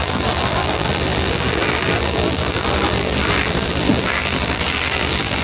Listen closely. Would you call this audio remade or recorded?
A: remade